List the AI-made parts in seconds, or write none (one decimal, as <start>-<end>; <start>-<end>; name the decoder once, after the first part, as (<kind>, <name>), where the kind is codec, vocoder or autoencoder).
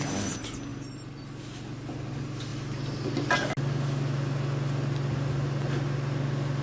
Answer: none